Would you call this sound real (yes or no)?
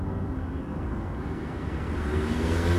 no